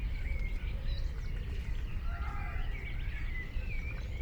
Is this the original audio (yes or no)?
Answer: yes